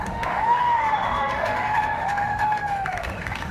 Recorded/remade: remade